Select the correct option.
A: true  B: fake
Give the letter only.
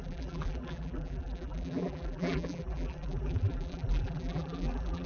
B